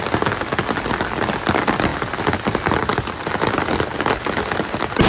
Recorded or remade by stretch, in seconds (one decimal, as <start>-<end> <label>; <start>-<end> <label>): 0.0-5.1 recorded